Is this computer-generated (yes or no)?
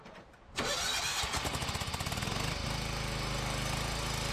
no